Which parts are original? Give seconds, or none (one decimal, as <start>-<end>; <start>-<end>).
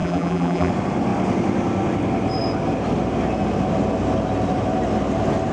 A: 0.7-5.5